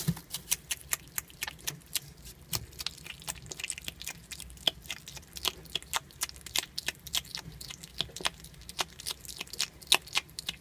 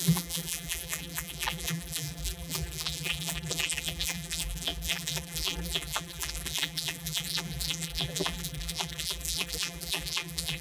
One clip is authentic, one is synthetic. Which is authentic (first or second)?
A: first